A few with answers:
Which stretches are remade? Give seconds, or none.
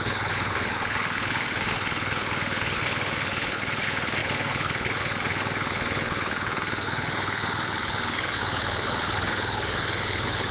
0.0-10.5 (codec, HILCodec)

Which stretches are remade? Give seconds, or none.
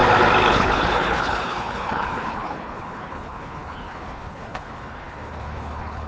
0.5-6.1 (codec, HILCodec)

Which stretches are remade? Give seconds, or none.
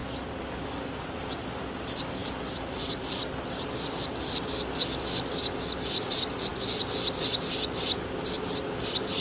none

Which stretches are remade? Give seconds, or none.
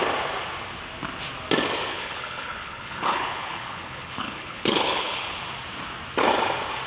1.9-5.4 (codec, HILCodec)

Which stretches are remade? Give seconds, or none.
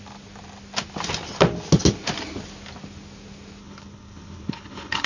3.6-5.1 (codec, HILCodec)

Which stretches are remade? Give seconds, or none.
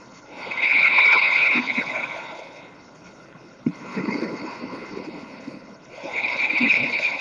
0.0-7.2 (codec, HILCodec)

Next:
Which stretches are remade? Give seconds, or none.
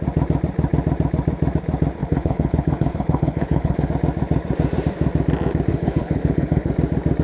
2.0-3.9 (codec, HILCodec); 5.7-6.7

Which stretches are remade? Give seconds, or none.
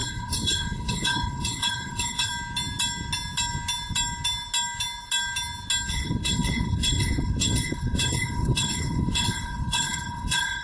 0.0-2.3 (codec, HILCodec); 5.9-10.6